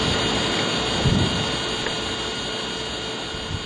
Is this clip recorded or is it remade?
recorded